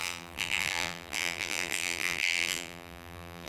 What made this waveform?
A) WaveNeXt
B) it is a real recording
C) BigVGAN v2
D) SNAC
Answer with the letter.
C